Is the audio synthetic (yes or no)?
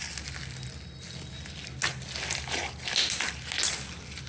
no